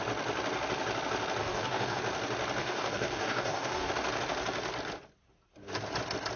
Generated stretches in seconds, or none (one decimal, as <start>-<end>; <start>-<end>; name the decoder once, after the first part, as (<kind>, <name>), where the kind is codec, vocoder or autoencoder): 1.4-2.0 (codec, DAC); 2.6-3.9